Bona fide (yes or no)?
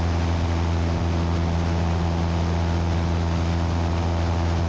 yes